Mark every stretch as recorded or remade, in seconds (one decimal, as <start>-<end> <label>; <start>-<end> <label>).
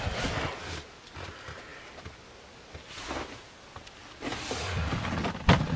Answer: 0.0-5.8 recorded